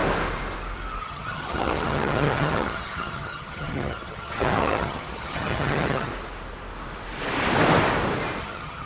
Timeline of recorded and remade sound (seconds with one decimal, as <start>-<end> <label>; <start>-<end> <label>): 0.0-1.0 recorded; 1.0-6.1 remade; 6.1-8.4 recorded; 8.4-8.9 remade